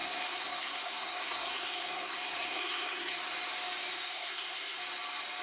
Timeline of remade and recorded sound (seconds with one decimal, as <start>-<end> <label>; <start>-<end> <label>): 0.0-3.2 remade; 3.2-3.9 recorded; 3.9-4.8 remade; 4.8-5.4 recorded